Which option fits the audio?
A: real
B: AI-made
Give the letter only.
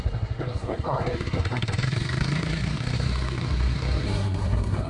B